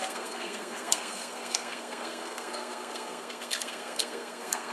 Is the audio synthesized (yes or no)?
yes